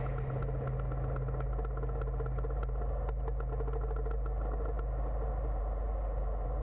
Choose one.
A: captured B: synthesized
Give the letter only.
A